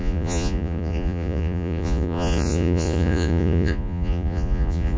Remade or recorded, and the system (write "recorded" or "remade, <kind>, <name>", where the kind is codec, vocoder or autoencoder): remade, vocoder, Vocos